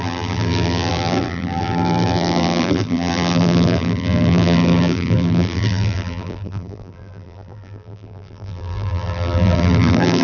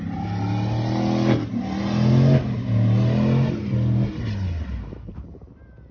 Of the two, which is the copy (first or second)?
first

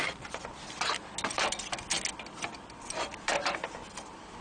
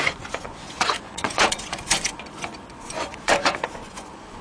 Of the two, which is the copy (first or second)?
second